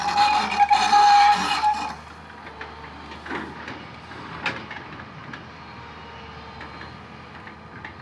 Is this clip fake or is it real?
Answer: real